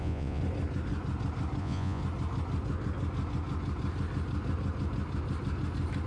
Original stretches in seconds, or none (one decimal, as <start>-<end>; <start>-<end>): 0.4-1.6; 2.0-6.1